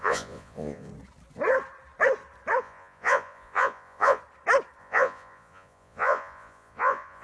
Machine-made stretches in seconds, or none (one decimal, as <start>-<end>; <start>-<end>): 0.0-0.9; 2.6-4.2; 4.8-7.2